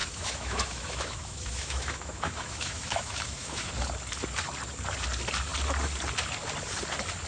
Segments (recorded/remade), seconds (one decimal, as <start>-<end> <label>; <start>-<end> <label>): 0.0-3.7 remade; 3.7-7.3 recorded